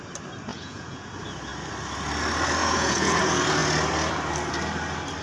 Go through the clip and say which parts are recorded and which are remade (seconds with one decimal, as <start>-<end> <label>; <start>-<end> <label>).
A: 0.0-0.5 recorded; 0.5-1.1 remade; 1.1-2.6 recorded; 2.6-3.2 remade; 3.2-5.2 recorded